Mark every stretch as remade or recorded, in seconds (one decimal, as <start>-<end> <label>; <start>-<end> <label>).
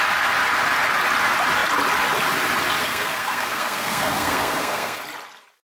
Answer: 0.0-2.8 recorded; 2.8-5.0 remade; 5.0-5.8 recorded